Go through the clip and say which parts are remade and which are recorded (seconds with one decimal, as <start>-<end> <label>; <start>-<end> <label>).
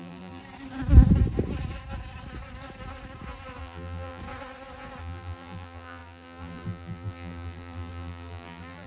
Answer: 0.0-0.4 remade; 0.4-3.6 recorded; 3.6-4.2 remade; 4.2-5.0 recorded; 5.0-8.9 remade